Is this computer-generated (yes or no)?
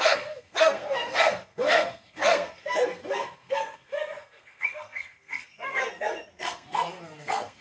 yes